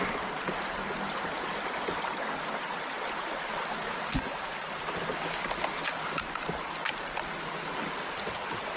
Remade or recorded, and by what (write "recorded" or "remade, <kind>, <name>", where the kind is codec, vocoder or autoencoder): recorded